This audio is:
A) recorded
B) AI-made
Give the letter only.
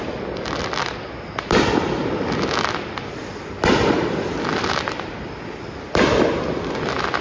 B